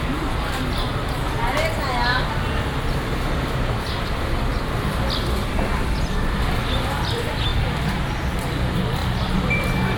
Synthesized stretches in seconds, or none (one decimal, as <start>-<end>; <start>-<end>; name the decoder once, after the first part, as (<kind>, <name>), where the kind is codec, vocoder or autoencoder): 7.5-8.5 (vocoder, BigVGAN v2); 9.0-10.0